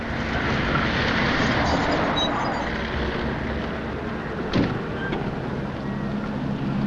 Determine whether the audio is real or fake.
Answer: real